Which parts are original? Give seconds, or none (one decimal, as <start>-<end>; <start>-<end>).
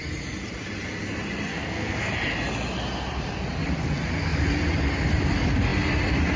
0.0-1.5; 2.1-6.4